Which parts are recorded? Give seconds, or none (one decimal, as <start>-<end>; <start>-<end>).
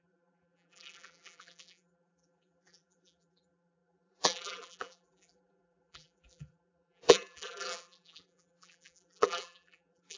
none